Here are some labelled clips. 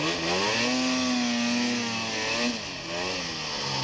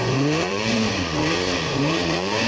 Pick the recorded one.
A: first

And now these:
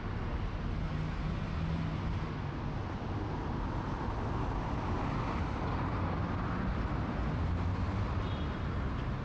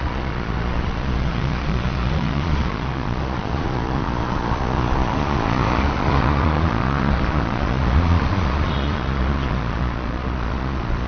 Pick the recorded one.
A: first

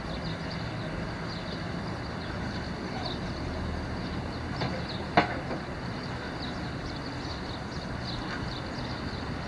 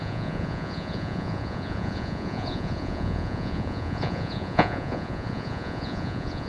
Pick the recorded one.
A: first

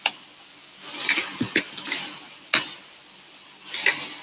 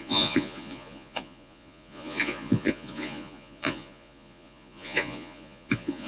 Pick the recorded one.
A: first